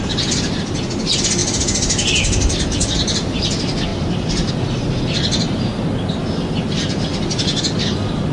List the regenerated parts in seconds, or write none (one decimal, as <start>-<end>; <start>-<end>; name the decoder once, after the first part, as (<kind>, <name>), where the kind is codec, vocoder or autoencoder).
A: none